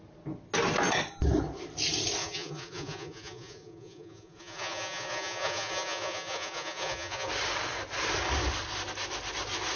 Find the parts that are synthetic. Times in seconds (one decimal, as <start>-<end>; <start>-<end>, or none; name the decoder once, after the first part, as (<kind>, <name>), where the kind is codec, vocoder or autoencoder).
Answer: 2.2-7.3 (vocoder, Vocos)